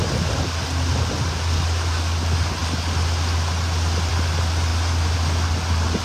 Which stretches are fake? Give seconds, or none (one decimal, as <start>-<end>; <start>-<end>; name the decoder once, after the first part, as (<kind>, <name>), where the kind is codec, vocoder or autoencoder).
none